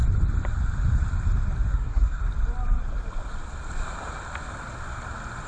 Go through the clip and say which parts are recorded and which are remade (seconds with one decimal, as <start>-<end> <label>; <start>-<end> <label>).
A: 0.0-1.7 recorded; 1.7-2.2 remade; 2.2-5.5 recorded